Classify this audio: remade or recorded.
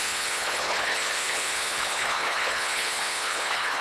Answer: remade